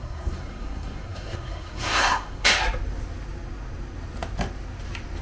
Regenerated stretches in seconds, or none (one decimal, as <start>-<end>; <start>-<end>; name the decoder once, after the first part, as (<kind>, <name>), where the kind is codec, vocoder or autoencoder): 0.0-2.5 (codec, SNAC)

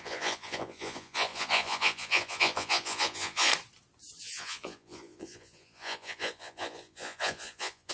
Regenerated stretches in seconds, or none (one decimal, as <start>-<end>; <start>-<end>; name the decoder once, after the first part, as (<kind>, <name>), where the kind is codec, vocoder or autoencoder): 0.0-3.5 (vocoder, Vocos); 4.2-7.9